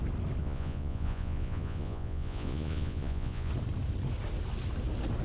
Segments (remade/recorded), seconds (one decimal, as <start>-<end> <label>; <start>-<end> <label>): 0.0-0.4 recorded; 0.4-3.5 remade; 3.5-5.2 recorded